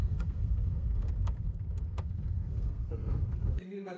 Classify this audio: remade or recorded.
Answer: remade